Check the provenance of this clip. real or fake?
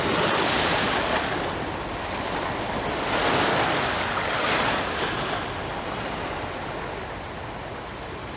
real